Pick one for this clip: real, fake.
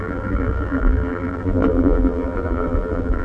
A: fake